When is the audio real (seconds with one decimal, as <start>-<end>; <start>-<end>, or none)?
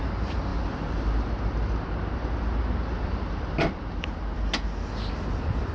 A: 0.0-5.7